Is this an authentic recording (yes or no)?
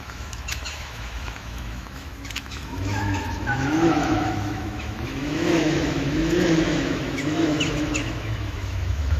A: no